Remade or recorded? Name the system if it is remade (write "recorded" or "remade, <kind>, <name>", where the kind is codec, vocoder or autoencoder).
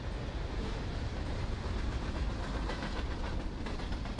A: recorded